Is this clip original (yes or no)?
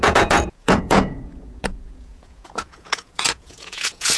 no